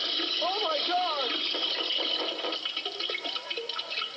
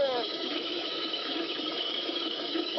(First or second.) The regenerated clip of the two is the second